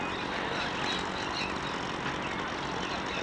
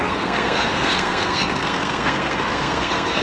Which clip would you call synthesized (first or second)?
second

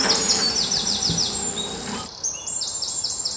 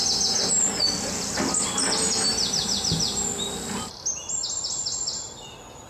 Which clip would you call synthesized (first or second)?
first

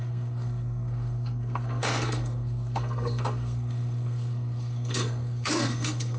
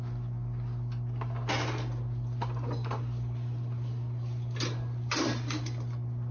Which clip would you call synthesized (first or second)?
first